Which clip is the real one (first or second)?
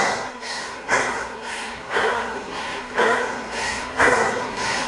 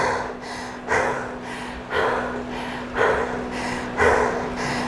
second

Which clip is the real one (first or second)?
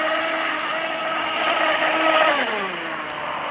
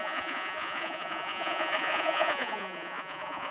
first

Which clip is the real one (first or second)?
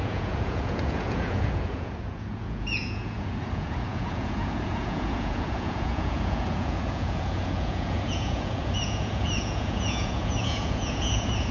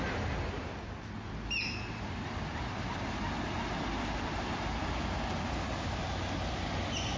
second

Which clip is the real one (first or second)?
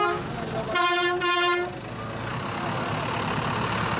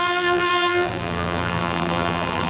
first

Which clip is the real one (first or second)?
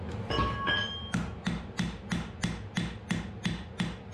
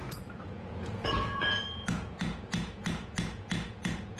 first